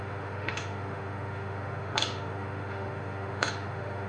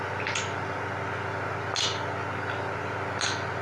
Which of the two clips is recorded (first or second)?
second